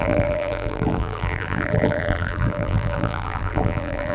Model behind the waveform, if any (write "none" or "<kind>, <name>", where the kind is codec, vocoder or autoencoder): vocoder, BigVGAN v2